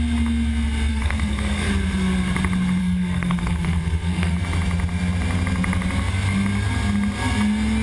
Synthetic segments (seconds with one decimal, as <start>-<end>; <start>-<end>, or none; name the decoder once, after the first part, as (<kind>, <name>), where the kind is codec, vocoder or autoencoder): 0.9-1.7 (codec, SNAC); 2.8-4.3